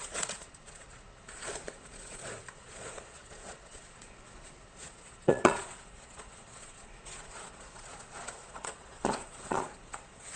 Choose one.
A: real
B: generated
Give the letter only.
B